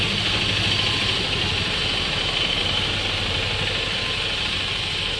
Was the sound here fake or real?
real